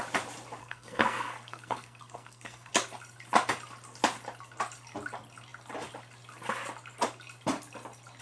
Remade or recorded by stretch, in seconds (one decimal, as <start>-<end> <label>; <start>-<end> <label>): 0.0-0.6 recorded; 0.6-2.7 remade; 2.7-8.2 recorded